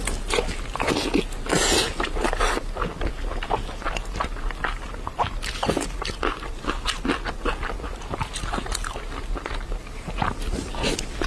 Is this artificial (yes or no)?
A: no